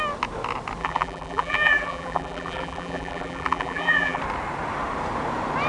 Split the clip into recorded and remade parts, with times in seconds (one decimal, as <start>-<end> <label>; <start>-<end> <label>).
0.0-0.8 recorded; 0.8-4.2 remade; 4.2-5.7 recorded